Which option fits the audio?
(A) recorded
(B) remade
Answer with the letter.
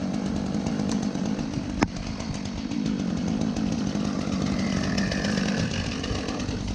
A